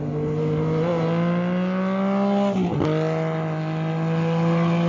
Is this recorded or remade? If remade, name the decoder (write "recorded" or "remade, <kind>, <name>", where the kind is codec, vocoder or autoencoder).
recorded